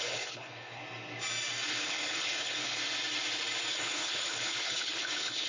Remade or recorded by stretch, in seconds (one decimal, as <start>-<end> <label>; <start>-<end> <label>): 0.0-0.8 remade; 0.8-1.7 recorded; 1.7-2.8 remade; 2.8-3.7 recorded; 3.7-5.5 remade